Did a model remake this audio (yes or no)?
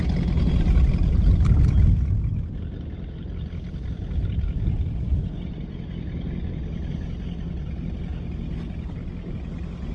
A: no